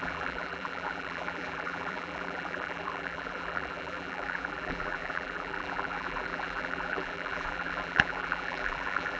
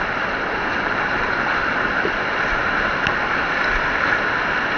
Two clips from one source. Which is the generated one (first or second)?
first